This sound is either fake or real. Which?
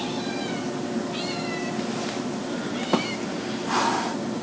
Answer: real